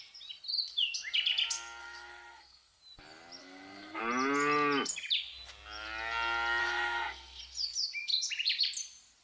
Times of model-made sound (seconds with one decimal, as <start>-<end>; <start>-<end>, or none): 1.8-2.8; 3.4-4.0; 6.6-7.4